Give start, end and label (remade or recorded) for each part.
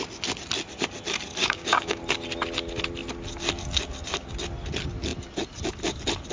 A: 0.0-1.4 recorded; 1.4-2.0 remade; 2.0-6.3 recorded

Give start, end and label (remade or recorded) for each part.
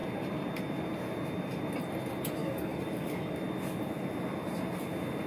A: 0.0-2.4 recorded; 2.4-3.3 remade; 3.3-5.3 recorded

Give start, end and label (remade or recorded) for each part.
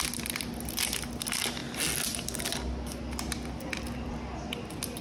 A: 0.0-5.0 recorded